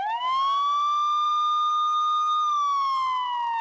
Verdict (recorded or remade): recorded